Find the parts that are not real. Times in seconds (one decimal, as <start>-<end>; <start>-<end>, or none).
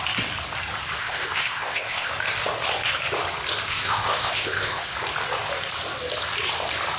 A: 1.0-2.1; 3.7-4.8